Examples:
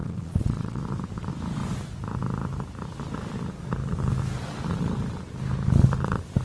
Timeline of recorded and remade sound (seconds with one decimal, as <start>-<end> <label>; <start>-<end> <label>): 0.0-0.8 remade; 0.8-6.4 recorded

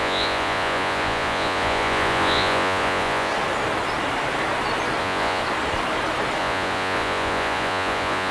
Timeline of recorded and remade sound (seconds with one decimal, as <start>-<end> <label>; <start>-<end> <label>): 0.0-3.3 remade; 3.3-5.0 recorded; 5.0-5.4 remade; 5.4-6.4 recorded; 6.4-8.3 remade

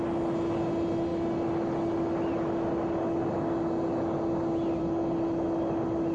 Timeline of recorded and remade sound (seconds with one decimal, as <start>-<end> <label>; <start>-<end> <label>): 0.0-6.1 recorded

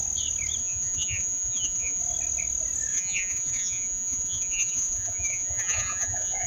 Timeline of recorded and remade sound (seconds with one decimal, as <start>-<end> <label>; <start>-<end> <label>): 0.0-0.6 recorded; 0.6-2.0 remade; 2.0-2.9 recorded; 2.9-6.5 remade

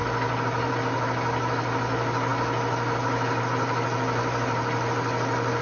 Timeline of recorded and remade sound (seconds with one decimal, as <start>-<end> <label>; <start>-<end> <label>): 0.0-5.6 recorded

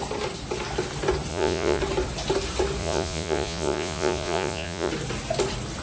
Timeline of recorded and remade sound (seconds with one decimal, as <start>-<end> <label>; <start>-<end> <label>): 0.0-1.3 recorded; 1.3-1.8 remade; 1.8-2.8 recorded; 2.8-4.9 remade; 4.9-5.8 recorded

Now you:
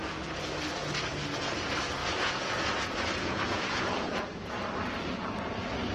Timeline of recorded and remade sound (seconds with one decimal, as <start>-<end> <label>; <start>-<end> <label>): 0.0-2.0 recorded; 2.0-4.2 remade; 4.2-5.9 recorded

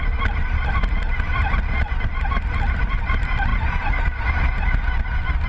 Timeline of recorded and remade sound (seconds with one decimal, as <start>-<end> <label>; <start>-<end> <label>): 0.0-5.5 recorded